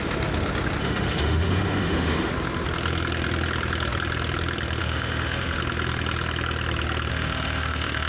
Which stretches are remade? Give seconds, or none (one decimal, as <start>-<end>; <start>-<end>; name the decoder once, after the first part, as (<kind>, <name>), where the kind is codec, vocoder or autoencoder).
0.8-2.3 (autoencoder, DAC-VAE); 4.8-5.6; 7.1-8.1